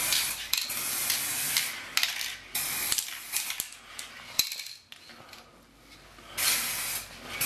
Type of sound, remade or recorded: recorded